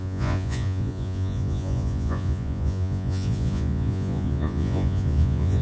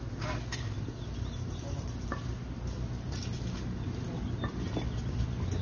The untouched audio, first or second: second